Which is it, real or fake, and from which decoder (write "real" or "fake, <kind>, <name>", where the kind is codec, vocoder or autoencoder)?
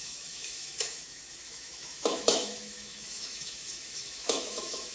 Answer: fake, autoencoder, DAC-VAE